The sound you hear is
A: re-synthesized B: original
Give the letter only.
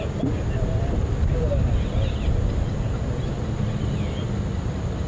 B